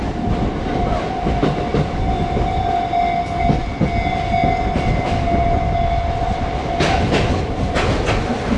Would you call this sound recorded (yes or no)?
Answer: yes